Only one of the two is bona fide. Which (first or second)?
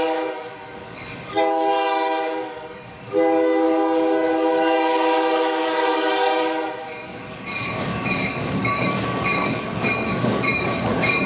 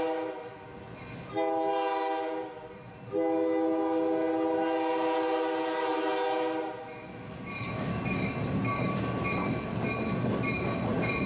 second